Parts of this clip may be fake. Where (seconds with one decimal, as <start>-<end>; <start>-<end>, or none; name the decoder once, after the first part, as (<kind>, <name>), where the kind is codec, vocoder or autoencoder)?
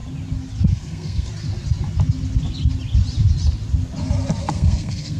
0.7-1.3 (codec, SNAC); 4.4-5.2